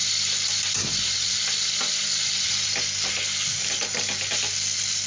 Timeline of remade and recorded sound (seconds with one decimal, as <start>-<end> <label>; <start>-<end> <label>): 0.0-3.1 remade; 3.1-5.1 recorded